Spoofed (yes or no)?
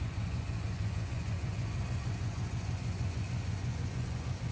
yes